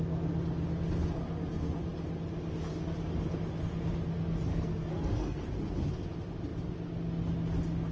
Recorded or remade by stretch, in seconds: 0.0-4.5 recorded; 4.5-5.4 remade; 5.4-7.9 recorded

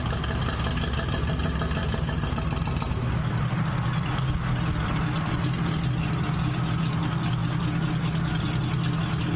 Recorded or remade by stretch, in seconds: 0.0-9.4 recorded

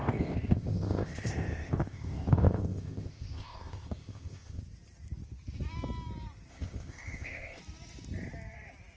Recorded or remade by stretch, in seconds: 0.0-4.6 remade; 4.6-6.5 recorded; 6.5-7.6 remade; 7.6-9.0 recorded